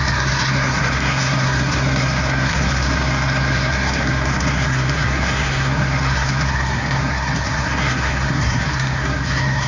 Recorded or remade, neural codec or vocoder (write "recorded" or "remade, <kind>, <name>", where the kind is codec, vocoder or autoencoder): remade, codec, SNAC